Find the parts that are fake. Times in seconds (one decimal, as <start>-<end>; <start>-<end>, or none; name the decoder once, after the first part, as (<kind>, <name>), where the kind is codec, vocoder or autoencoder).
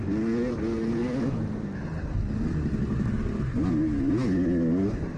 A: none